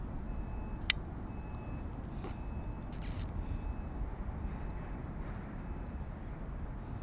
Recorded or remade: recorded